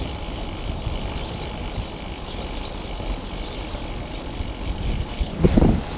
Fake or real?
real